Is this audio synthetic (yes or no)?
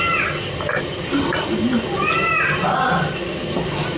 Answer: no